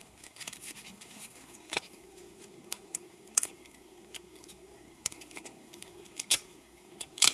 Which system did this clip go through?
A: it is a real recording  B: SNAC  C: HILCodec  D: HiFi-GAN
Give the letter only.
B